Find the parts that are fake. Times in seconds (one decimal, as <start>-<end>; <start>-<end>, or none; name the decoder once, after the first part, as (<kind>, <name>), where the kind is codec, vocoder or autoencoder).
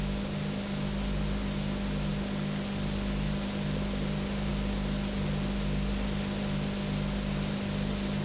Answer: none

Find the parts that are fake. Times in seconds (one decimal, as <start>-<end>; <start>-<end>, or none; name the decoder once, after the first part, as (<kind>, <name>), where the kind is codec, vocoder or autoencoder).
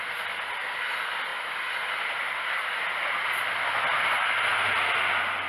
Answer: none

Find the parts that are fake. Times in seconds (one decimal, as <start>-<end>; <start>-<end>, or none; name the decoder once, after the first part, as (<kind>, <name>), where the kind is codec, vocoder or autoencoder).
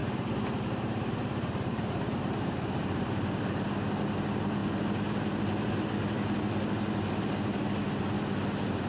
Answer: 0.0-2.8 (vocoder, BigVGAN v2)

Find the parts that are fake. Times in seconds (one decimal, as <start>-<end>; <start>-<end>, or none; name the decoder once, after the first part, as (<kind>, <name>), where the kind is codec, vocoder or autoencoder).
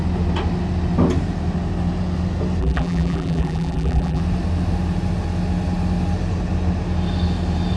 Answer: 2.6-4.2 (vocoder, BigVGAN v2)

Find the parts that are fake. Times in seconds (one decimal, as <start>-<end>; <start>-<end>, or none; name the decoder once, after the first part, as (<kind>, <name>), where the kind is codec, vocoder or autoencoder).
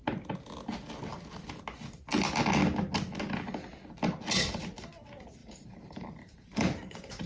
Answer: 5.4-7.3 (vocoder, BigVGAN v2)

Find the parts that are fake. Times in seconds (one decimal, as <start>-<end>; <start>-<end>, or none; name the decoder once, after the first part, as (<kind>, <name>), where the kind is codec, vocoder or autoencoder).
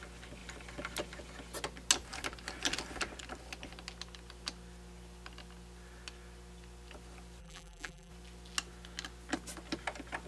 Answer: 7.4-8.1 (vocoder, BigVGAN v2)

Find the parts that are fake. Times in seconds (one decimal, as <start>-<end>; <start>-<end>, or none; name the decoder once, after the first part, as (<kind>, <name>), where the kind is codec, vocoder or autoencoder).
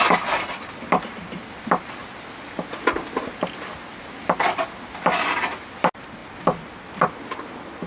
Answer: none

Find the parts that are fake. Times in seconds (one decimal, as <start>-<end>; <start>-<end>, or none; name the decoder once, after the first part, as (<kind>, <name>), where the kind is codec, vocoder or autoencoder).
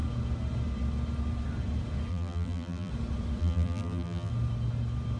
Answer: 2.1-2.9 (vocoder, BigVGAN v2); 3.4-4.3